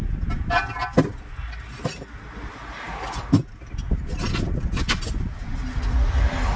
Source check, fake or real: real